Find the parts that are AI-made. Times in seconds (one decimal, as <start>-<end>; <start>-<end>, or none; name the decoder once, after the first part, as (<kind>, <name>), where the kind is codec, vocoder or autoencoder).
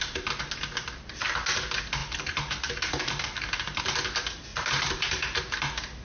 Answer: 2.0-3.8 (vocoder, BigVGAN v2); 4.5-5.6